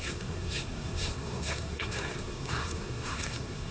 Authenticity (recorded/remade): remade